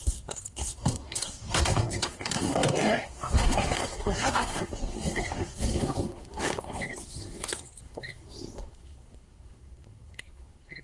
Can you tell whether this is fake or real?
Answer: fake